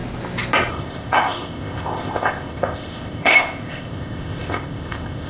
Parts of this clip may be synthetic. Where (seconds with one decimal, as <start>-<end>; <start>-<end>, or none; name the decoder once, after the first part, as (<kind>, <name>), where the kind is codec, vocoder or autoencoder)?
0.7-5.3 (codec, ZipCodec)